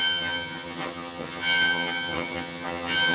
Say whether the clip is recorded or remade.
remade